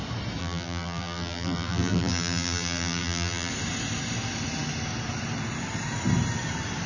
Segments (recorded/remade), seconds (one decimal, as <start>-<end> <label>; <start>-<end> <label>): 0.0-0.4 recorded; 0.4-3.5 remade; 3.5-6.9 recorded